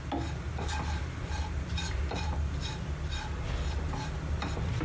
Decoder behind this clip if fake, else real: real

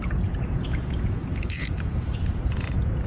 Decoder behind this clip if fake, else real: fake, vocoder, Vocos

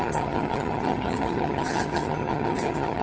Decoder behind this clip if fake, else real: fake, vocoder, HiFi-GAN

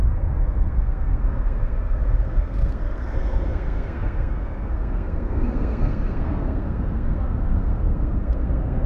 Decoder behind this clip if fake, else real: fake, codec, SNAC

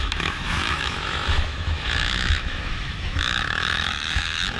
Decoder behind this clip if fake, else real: fake, autoencoder, DAC-VAE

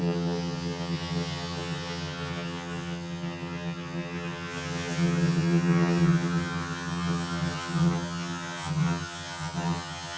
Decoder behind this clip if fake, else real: fake, vocoder, HiFi-GAN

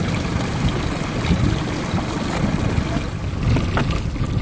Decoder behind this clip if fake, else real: real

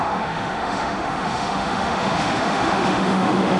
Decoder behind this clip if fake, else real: fake, autoencoder, DAC-VAE